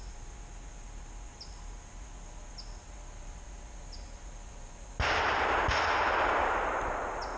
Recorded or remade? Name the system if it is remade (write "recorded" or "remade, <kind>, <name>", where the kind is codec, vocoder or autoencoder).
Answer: recorded